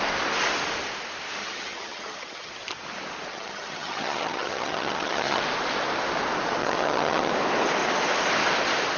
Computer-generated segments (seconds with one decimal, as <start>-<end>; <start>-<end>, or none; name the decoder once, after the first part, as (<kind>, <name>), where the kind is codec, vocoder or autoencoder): 1.4-2.5 (vocoder, HiFi-GAN); 3.3-5.4; 6.6-7.3